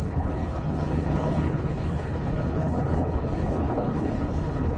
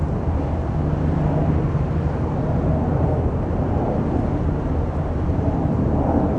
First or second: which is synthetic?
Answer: first